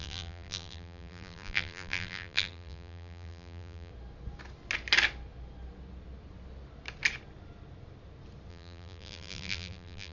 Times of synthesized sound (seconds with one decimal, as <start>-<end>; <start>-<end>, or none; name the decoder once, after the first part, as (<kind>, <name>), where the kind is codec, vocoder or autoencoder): 0.0-3.9 (vocoder, BigVGAN v2); 8.5-10.1

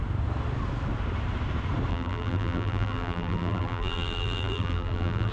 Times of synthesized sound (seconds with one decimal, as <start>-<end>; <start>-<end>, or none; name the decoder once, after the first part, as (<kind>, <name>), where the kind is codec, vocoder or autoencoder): 1.9-5.3 (vocoder, BigVGAN v2)

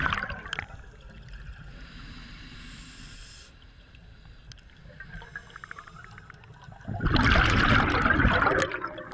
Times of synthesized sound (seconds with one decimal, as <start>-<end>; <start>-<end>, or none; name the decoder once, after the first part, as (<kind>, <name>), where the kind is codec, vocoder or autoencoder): none

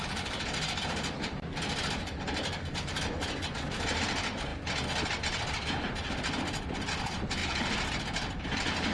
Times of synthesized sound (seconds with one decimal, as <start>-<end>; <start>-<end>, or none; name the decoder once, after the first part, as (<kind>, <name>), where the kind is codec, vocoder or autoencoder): 0.0-4.5 (vocoder, BigVGAN v2); 6.9-8.9

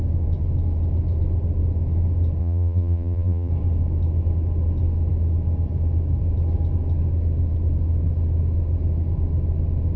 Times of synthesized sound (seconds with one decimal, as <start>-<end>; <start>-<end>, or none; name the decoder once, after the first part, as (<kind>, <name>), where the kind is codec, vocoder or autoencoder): 2.4-3.5 (vocoder, BigVGAN v2)

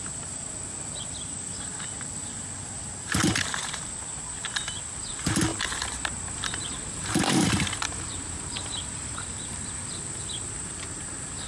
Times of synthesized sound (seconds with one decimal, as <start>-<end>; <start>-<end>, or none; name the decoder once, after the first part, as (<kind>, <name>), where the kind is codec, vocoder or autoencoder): 5.5-10.5 (vocoder, BigVGAN v2)

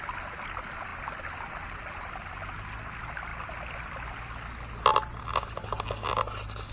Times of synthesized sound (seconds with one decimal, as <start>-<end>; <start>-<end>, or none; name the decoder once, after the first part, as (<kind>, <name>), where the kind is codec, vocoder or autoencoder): 3.3-4.1 (vocoder, BigVGAN v2)